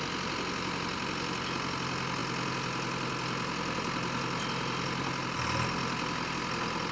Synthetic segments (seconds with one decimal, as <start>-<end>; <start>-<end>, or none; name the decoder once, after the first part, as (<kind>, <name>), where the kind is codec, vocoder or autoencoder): none